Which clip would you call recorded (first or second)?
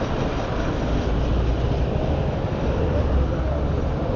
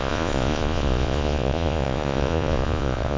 first